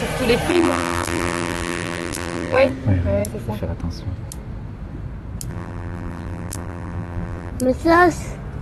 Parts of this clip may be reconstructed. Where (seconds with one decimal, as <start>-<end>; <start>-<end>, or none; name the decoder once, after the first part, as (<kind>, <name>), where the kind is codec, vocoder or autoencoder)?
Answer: 0.5-2.7 (vocoder, BigVGAN v2); 5.5-7.5